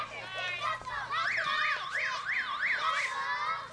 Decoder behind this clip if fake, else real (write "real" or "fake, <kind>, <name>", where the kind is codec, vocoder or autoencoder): real